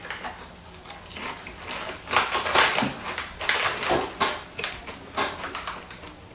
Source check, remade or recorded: recorded